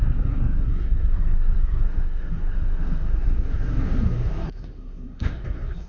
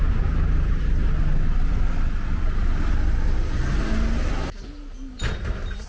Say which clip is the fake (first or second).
first